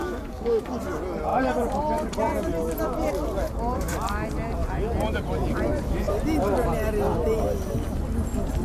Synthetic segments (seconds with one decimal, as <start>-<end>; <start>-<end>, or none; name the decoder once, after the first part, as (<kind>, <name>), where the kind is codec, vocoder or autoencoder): 0.0-0.8 (codec, DAC)